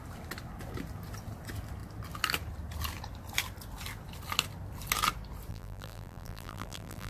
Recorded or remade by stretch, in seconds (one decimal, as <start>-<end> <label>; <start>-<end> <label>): 0.0-5.5 recorded; 5.5-7.1 remade